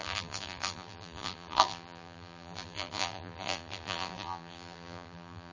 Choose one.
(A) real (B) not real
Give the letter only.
B